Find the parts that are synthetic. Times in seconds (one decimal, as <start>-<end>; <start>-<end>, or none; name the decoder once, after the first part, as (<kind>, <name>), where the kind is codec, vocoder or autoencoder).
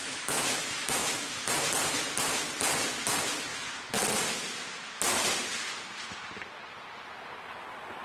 0.0-1.5 (autoencoder, DAC-VAE)